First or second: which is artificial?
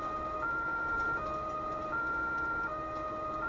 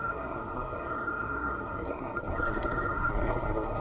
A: second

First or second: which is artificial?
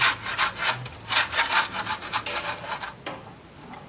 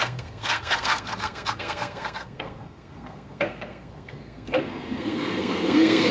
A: second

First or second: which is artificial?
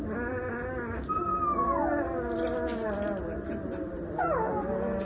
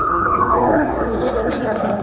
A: second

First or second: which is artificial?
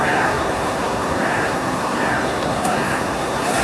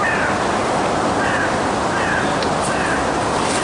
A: first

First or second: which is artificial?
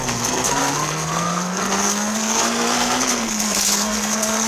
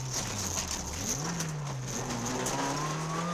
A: first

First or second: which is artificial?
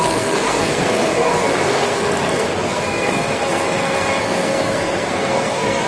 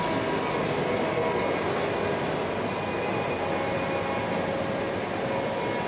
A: first